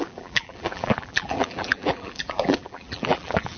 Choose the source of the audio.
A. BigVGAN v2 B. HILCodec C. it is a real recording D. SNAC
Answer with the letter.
A